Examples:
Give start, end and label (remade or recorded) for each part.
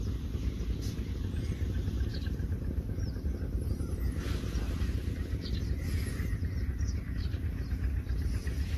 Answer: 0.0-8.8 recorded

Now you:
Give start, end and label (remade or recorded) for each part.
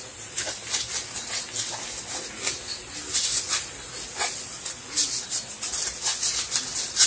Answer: 0.0-7.1 recorded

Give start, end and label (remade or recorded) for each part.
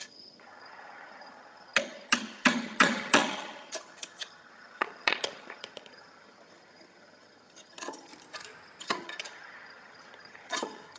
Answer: 0.0-8.1 remade; 8.1-8.8 recorded; 8.8-11.0 remade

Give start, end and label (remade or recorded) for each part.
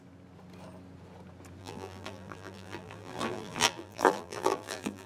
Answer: 0.0-1.6 recorded; 1.6-5.1 remade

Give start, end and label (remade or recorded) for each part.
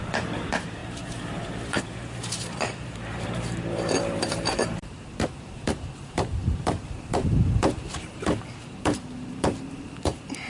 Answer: 0.0-10.5 remade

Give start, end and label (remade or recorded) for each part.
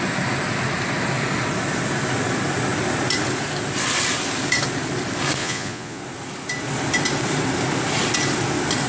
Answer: 0.0-5.4 recorded; 5.4-6.0 remade; 6.0-8.9 recorded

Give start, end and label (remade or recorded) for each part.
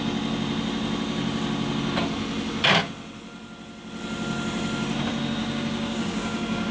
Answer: 0.0-5.4 recorded; 5.4-6.7 remade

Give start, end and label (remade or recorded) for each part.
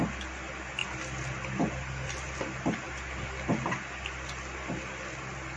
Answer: 0.0-5.6 recorded